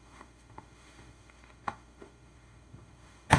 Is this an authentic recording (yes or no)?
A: no